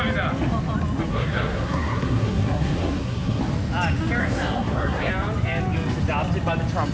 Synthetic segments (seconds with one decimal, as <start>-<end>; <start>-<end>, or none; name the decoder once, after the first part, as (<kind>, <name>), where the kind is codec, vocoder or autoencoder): 1.1-3.4 (codec, SNAC); 4.2-5.1